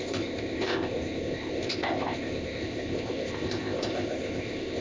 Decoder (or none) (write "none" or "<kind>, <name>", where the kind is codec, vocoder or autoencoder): codec, ZipCodec